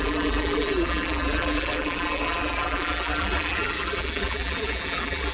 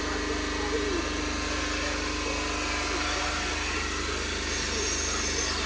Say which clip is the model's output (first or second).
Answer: first